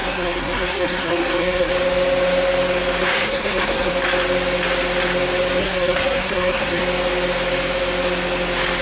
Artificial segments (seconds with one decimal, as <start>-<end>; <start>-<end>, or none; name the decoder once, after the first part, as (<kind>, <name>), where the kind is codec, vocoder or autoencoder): 0.0-1.7 (codec, SNAC); 3.0-3.9; 5.6-6.8